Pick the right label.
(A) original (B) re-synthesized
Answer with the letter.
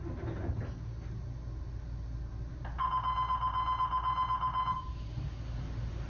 A